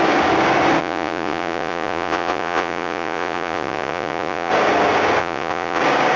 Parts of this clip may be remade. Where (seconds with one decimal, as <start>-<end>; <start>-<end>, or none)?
0.8-4.5; 5.2-5.8